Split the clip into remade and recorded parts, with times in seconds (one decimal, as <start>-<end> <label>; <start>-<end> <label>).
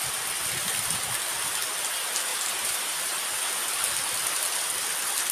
0.0-2.3 recorded; 2.3-3.3 remade; 3.3-5.3 recorded